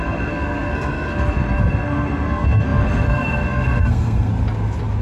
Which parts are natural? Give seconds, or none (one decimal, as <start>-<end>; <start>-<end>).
4.3-5.0